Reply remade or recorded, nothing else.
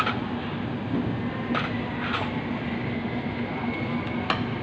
recorded